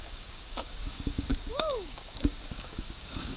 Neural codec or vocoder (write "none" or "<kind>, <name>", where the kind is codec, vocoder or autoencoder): codec, DAC